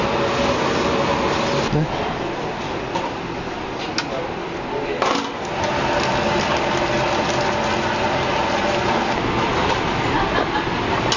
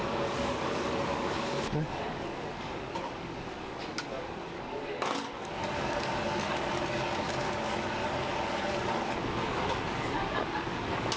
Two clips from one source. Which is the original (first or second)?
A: first